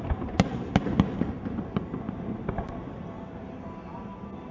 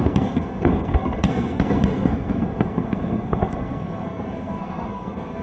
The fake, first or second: second